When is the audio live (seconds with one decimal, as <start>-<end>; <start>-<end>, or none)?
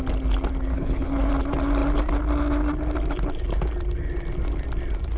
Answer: 0.0-0.7; 1.3-5.2